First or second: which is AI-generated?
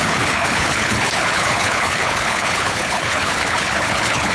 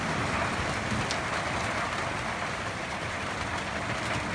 first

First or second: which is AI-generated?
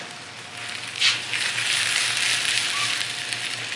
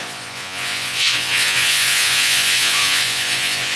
second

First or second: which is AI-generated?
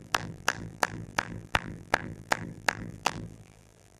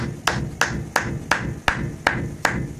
first